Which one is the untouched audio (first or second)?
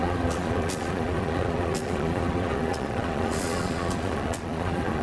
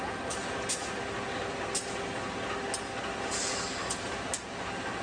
second